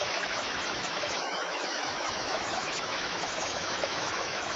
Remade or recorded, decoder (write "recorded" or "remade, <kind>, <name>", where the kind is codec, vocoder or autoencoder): remade, autoencoder, DAC-VAE